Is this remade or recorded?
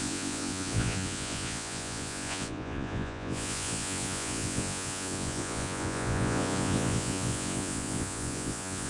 remade